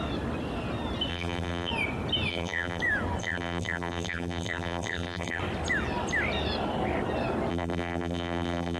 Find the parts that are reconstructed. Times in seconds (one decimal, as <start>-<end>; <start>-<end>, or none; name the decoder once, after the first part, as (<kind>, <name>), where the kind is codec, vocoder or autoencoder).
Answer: 1.1-1.7 (vocoder, BigVGAN v2); 2.3-2.8; 3.2-5.4; 7.5-8.8